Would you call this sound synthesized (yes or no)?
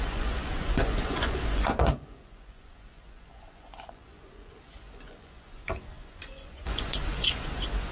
yes